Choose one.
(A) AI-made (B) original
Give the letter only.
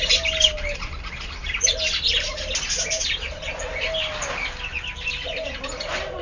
B